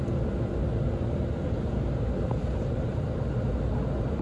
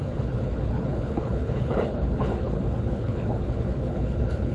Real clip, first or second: first